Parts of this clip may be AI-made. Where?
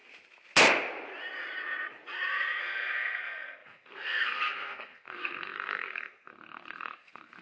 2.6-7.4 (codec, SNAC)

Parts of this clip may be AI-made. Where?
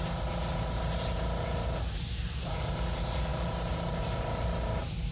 none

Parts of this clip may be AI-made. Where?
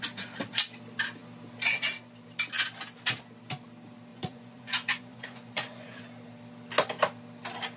4.1-6.0 (vocoder, Vocos)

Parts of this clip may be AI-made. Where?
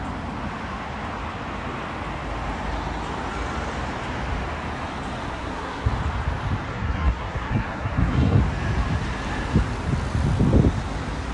5.3-5.9 (codec, SNAC); 6.7-8.4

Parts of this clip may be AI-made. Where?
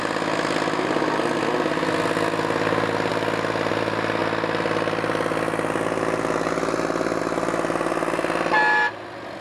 none